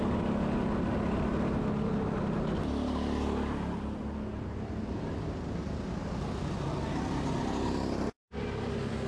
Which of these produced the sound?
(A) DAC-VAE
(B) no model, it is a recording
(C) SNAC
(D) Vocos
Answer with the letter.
B